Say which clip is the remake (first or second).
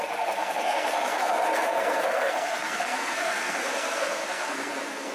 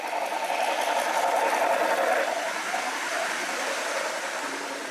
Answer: first